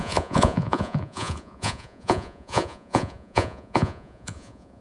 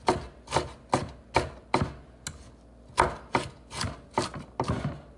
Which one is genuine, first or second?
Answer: second